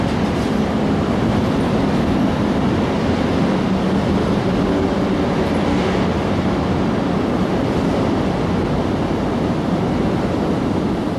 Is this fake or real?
real